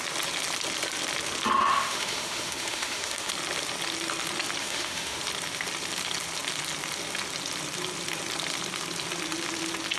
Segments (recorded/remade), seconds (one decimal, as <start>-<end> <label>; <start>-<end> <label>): 0.0-1.7 recorded; 1.7-3.3 remade; 3.3-4.6 recorded; 4.6-5.2 remade; 5.2-10.0 recorded